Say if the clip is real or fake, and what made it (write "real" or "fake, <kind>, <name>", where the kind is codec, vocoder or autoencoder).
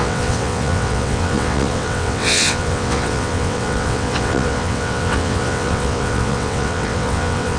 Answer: fake, vocoder, WaveNeXt